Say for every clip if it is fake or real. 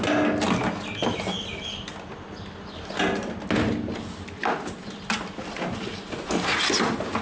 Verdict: real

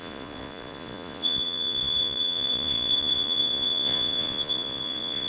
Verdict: fake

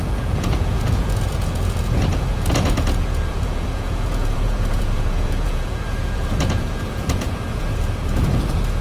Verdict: fake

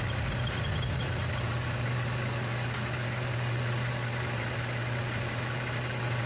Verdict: real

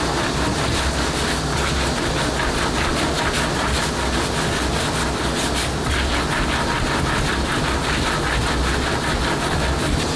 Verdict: real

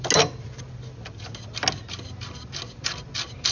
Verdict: real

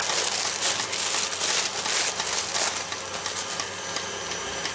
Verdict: real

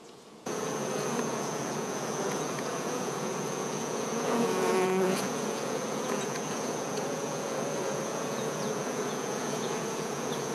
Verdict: fake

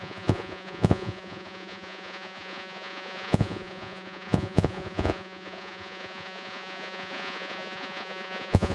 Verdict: fake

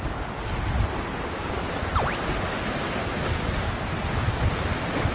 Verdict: real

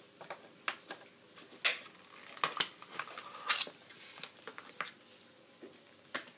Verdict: real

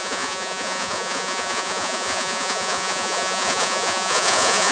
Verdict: fake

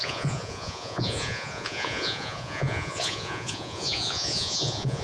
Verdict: fake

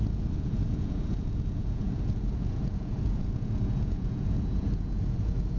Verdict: fake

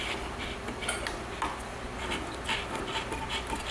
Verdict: real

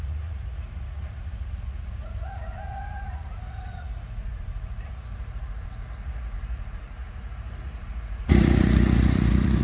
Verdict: fake